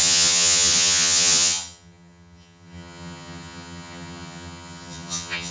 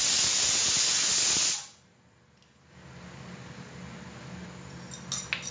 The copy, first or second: first